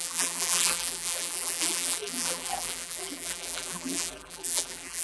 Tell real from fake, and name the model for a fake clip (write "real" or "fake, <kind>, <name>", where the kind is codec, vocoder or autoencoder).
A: fake, vocoder, BigVGAN v2